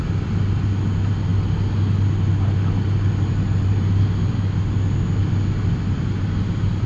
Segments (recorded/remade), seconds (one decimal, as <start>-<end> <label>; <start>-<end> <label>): 0.0-6.9 recorded